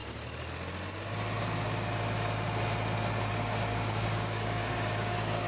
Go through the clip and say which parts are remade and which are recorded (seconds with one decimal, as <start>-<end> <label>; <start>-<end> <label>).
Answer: 0.0-3.3 recorded; 3.3-5.5 remade